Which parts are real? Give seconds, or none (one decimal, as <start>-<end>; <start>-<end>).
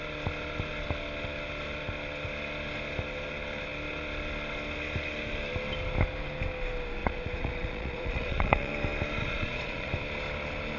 0.0-7.0; 8.7-9.2; 9.9-10.8